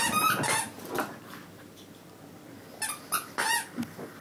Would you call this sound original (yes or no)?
yes